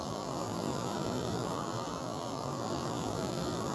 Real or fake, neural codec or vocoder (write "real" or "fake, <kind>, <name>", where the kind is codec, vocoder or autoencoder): fake, vocoder, BigVGAN v2